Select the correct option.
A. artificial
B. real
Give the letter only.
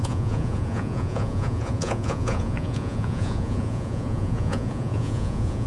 A